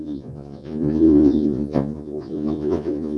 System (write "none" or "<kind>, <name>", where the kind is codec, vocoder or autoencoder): vocoder, Vocos